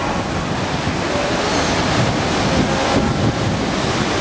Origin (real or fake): real